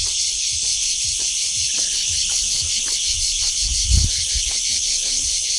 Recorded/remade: remade